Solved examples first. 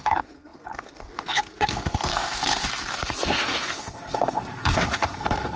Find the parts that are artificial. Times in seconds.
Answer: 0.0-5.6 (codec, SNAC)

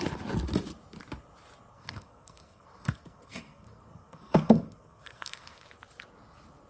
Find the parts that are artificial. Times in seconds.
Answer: 1.7-5.7 (codec, SNAC)

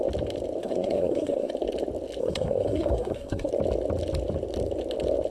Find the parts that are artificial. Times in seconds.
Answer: 0.6-1.5 (codec, SNAC); 2.2-3.5

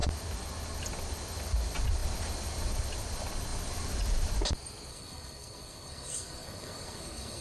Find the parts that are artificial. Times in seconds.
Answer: 4.9-7.4 (codec, SNAC)

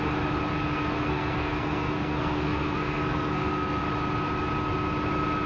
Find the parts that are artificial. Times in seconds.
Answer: 0.5-3.8 (codec, SNAC)

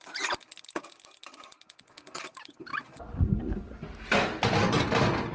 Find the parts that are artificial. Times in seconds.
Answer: none

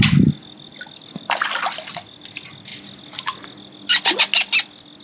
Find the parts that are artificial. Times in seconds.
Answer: none